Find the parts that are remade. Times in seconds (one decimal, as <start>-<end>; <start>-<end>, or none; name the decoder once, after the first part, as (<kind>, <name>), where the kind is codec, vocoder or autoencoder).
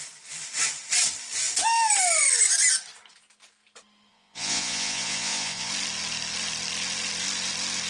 4.1-5.7 (vocoder, Vocos)